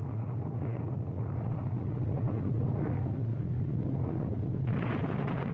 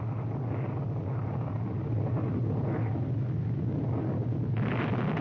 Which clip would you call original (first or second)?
second